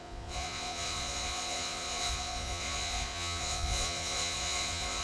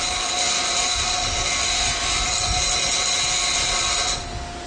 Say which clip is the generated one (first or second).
first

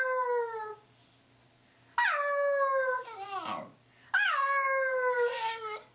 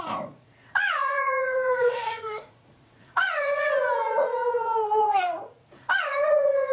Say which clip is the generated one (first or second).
second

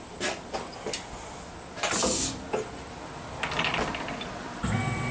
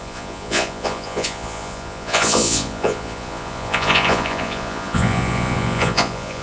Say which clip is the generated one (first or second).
second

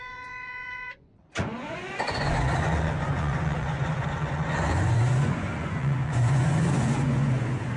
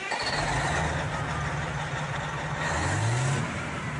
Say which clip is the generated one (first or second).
first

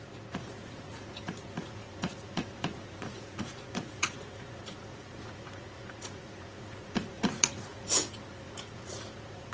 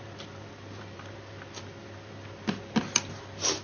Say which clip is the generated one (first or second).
first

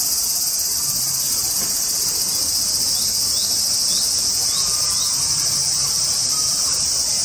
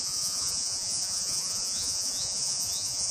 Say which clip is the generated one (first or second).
second